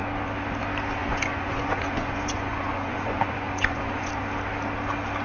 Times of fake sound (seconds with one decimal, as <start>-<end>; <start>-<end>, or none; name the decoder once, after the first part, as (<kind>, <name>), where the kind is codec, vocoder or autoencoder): 1.0-4.1 (vocoder, Vocos)